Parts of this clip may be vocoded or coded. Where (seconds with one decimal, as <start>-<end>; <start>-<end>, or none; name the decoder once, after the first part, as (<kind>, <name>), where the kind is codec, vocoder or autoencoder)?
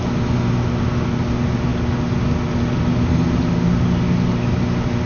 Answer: none